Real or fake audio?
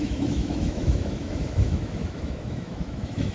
fake